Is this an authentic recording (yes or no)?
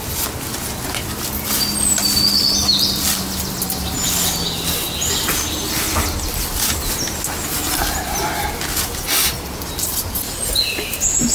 yes